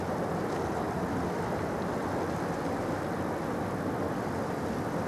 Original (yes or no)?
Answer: yes